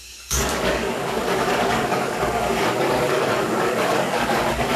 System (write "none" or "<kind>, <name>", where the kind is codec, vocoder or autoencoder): codec, DAC